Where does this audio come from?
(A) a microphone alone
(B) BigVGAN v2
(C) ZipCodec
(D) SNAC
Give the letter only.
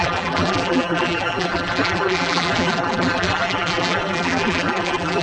B